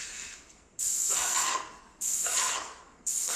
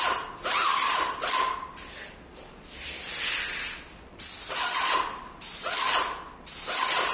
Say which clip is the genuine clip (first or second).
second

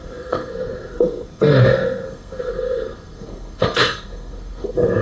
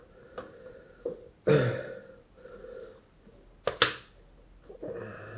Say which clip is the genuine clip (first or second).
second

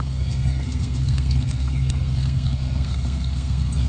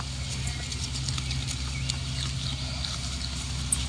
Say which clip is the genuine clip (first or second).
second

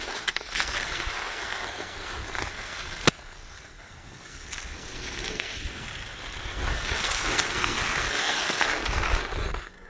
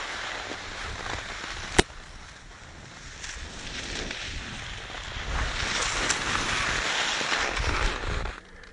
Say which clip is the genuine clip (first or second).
second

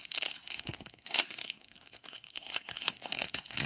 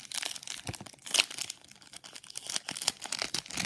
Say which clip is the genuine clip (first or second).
second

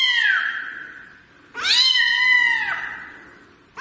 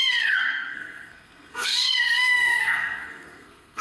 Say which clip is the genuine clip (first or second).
first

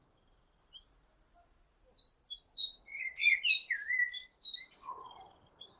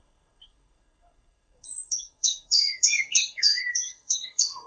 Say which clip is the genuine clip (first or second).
first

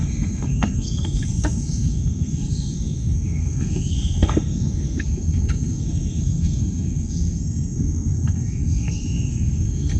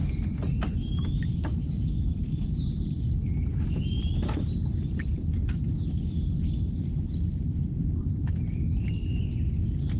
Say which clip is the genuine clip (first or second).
second